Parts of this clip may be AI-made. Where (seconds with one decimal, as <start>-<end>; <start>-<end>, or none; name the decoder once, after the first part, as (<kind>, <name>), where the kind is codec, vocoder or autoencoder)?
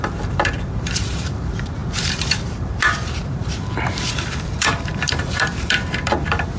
0.0-1.8 (vocoder, BigVGAN v2); 2.5-6.6